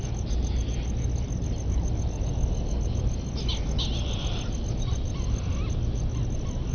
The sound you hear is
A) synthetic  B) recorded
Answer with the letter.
B